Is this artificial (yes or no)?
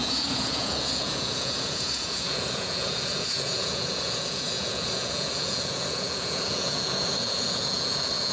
yes